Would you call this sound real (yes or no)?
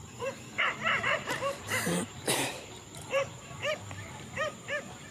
no